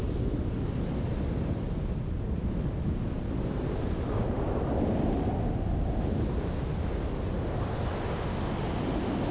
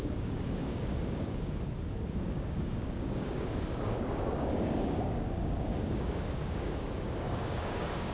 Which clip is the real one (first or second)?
first